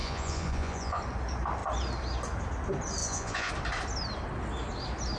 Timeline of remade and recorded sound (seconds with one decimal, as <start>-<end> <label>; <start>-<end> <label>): 0.0-1.0 remade; 1.0-3.0 recorded; 3.0-3.5 remade; 3.5-5.2 recorded